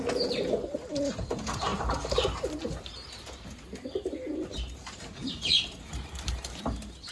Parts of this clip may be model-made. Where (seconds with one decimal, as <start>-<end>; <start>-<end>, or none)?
1.7-2.8; 4.5-6.6

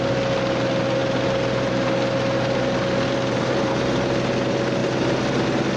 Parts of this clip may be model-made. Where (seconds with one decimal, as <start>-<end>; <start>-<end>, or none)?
none

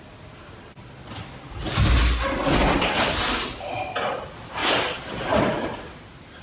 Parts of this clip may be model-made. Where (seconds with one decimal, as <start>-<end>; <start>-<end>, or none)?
2.6-4.1; 4.6-5.4

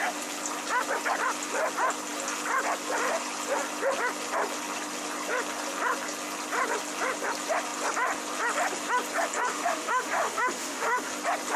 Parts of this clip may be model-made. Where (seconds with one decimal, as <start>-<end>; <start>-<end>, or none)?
9.5-11.1

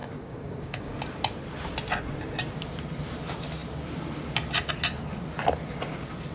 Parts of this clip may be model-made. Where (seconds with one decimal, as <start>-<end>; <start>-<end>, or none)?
0.0-1.0